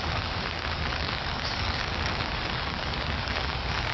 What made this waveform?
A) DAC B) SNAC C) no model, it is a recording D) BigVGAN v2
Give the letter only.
A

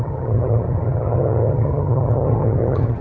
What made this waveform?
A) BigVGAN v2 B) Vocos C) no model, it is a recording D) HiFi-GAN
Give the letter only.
D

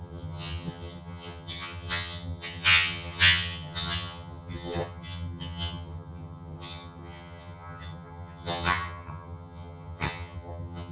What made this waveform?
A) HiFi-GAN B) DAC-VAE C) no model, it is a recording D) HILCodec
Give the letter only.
A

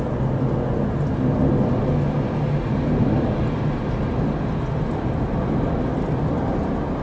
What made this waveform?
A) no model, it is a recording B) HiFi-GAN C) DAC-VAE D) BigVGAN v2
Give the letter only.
A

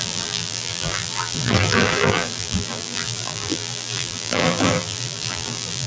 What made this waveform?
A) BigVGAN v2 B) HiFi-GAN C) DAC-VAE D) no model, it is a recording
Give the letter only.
A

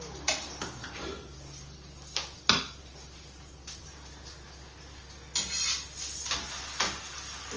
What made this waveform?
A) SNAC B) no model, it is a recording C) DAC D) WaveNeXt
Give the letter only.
B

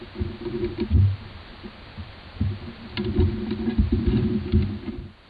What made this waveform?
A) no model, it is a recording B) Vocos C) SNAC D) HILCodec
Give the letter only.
A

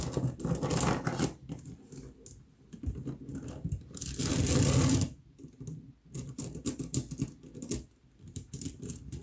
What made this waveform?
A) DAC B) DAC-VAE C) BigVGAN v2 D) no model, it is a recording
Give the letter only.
D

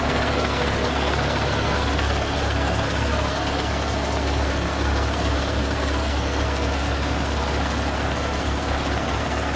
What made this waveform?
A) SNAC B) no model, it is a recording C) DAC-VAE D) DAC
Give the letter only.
A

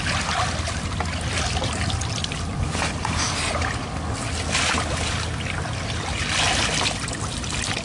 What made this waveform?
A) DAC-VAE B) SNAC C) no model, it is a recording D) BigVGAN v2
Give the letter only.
C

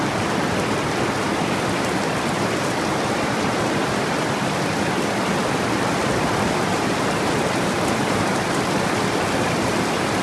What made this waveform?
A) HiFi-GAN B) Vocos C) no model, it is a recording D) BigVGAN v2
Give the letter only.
D